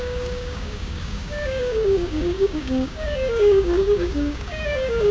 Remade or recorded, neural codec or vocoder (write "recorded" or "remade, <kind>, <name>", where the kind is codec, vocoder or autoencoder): remade, codec, DAC